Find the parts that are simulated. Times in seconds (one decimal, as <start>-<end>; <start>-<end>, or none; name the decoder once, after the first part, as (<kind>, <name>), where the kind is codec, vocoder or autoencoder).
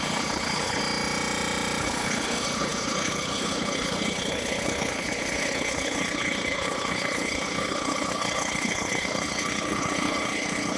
0.0-0.8 (codec, HILCodec); 1.8-10.8